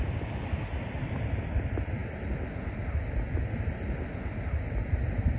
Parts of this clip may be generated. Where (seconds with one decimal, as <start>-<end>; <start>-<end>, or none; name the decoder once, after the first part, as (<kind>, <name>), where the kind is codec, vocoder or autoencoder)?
none